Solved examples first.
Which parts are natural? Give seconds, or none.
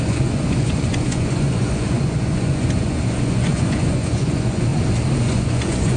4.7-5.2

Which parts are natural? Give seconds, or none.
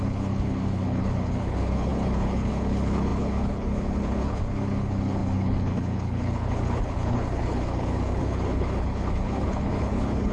none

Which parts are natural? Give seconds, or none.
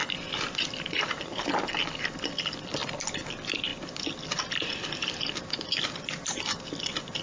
1.6-3.7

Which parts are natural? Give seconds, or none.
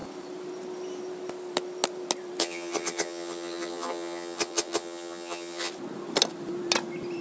0.0-2.4; 5.7-7.2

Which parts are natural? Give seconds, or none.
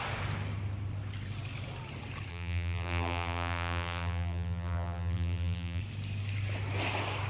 0.0-2.3; 5.8-7.3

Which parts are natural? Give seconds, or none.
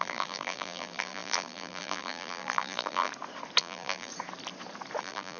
3.1-3.6; 4.1-5.0